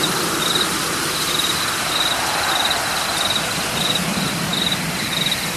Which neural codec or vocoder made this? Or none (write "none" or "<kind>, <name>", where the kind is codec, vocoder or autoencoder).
none